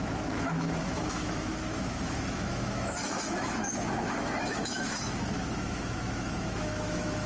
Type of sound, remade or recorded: remade